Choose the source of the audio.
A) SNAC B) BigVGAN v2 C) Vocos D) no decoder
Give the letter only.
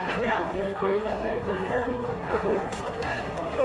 A